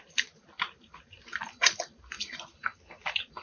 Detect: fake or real fake